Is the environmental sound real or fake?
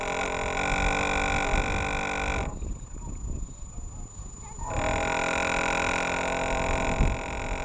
real